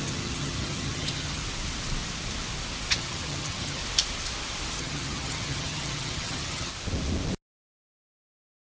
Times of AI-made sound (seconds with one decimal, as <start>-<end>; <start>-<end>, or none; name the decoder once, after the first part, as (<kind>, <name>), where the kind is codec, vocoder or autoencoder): 0.0-1.4 (vocoder, HiFi-GAN); 2.9-3.8; 4.8-6.7